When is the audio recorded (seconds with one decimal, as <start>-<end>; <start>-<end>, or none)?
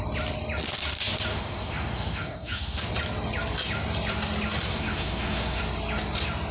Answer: 0.0-1.3; 2.8-4.7; 5.6-6.5